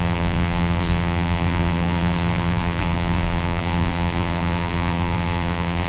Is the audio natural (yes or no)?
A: no